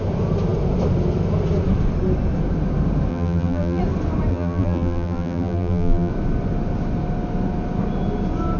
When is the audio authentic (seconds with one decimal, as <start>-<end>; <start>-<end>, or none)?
0.0-3.1; 3.8-4.3; 6.1-8.6